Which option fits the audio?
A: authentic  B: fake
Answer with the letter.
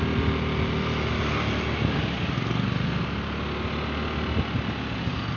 A